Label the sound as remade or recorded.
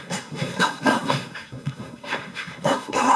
remade